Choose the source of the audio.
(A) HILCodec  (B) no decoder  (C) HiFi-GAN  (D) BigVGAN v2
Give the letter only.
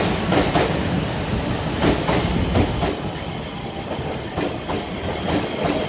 B